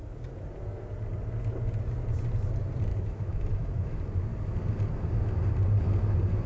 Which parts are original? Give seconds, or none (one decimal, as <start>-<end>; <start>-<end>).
0.0-2.9; 3.9-6.5